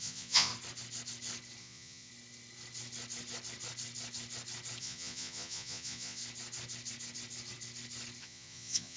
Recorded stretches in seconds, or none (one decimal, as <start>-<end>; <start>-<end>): 0.5-1.6; 2.1-4.8; 6.2-8.2